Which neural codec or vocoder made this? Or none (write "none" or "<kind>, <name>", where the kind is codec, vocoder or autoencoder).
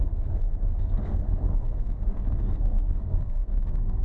codec, SNAC